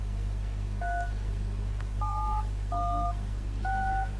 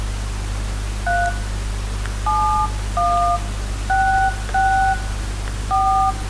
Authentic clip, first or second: second